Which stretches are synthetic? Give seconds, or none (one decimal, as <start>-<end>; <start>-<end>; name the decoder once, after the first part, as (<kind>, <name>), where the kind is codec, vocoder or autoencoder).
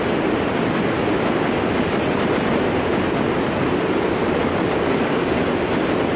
4.5-5.3 (codec, DAC)